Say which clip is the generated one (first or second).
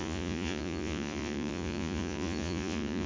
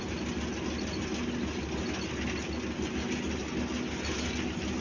first